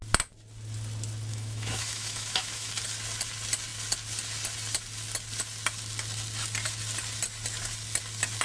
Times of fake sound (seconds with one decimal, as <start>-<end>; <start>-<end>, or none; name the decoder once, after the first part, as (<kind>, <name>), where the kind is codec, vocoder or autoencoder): 1.3-2.7 (autoencoder, DAC-VAE)